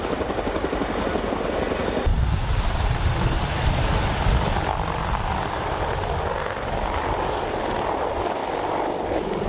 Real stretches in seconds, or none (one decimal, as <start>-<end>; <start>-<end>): 0.0-9.5